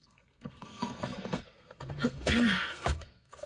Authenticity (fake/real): fake